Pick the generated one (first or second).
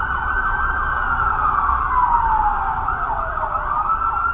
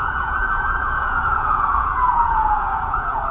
second